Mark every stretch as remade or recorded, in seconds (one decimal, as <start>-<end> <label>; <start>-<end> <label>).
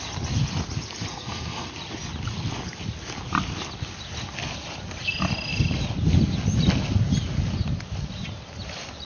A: 0.0-1.1 recorded; 1.1-1.7 remade; 1.7-9.1 recorded